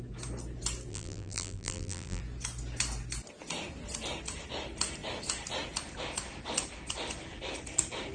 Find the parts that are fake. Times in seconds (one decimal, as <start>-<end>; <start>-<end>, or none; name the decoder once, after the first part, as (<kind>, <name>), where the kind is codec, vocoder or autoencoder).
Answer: 0.9-2.2 (vocoder, BigVGAN v2)